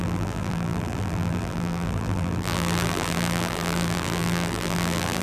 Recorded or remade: remade